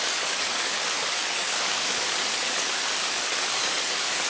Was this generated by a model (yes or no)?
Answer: yes